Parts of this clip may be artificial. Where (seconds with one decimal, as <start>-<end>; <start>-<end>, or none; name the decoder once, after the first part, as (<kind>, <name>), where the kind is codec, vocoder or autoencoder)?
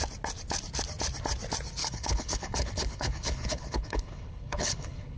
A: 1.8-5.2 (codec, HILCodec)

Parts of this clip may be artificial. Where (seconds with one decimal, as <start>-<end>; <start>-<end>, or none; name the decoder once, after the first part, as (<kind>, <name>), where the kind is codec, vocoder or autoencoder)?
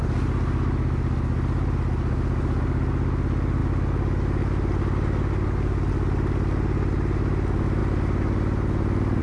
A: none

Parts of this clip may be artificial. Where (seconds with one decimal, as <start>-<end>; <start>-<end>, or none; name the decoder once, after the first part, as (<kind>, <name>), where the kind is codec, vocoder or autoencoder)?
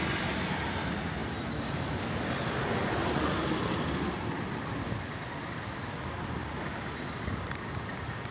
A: none